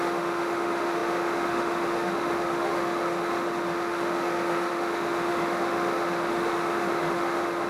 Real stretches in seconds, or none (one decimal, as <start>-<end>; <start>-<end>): none